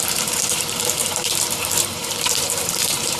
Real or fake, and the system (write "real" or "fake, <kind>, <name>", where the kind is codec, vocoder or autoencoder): fake, vocoder, BigVGAN v2